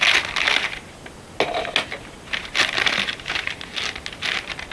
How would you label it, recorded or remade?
recorded